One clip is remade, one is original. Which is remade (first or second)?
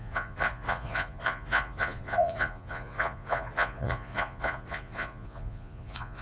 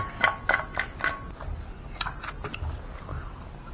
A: first